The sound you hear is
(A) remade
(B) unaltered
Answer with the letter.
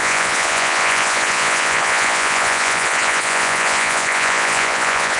A